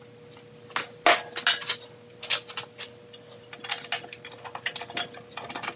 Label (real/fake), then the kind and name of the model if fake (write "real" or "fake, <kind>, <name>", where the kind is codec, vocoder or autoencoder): real